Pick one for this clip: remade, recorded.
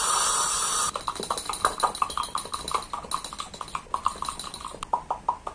recorded